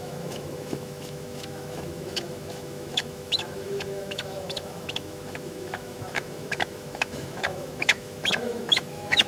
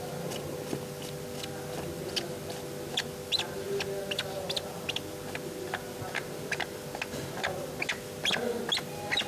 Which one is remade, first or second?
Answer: first